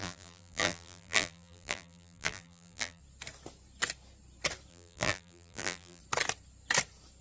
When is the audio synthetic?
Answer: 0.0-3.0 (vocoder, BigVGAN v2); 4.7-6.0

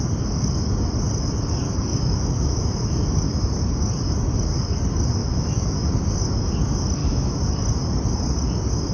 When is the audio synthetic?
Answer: 1.9-2.9 (autoencoder, DAC-VAE); 5.2-5.9; 7.0-7.5

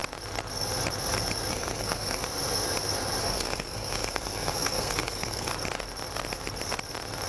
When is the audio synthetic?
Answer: 1.5-2.2 (codec, SNAC); 3.2-5.5

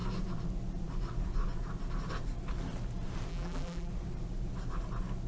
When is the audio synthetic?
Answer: 3.3-3.9 (vocoder, BigVGAN v2)

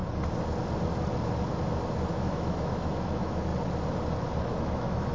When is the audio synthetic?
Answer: 2.1-3.5 (autoencoder, DAC-VAE); 4.6-5.1

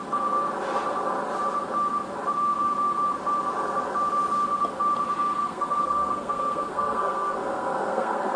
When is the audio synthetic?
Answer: 5.4-8.4 (codec, SNAC)